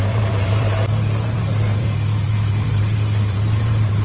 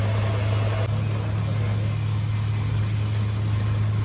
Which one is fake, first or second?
first